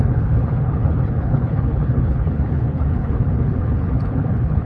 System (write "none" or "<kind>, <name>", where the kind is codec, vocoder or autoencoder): codec, HILCodec